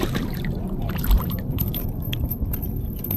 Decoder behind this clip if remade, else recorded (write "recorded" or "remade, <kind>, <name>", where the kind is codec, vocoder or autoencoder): remade, vocoder, BigVGAN v2